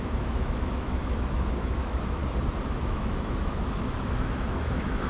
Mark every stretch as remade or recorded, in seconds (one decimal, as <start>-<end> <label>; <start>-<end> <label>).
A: 0.0-2.2 remade; 2.2-2.8 recorded; 2.8-5.1 remade